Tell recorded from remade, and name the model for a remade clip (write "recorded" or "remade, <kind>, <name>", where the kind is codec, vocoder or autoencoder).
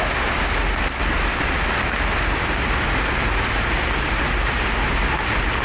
recorded